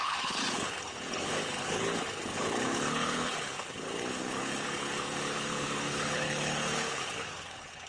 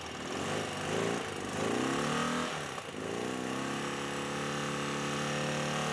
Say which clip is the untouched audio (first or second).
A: second